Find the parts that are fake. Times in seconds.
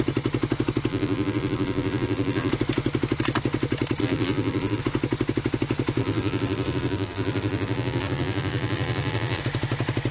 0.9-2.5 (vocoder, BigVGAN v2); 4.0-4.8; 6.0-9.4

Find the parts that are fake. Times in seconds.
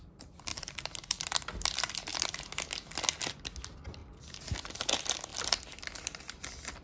0.5-1.2 (vocoder, BigVGAN v2)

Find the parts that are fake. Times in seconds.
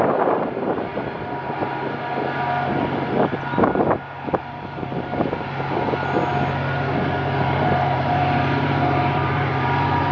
0.0-0.9 (vocoder, BigVGAN v2); 4.4-4.9; 7.4-10.1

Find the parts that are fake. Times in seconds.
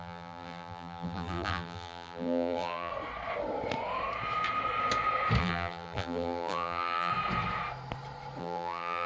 0.0-2.9 (vocoder, BigVGAN v2); 5.4-7.1; 8.4-9.1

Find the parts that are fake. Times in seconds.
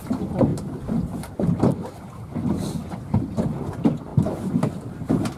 0.5-1.2 (vocoder, BigVGAN v2)